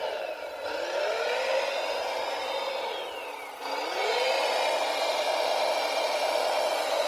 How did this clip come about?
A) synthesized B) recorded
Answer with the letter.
B